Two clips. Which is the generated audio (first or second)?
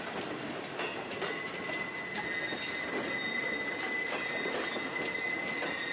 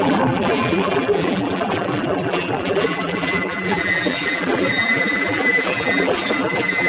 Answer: second